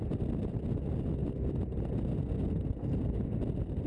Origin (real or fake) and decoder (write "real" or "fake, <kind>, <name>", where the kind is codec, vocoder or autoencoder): real